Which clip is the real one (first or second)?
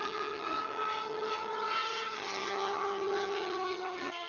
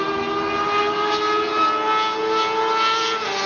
second